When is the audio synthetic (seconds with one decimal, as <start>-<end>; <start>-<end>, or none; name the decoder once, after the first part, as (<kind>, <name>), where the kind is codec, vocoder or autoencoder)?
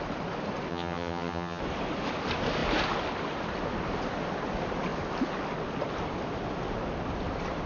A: 0.7-1.6 (vocoder, HiFi-GAN)